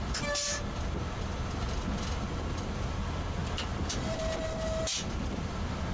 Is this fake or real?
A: real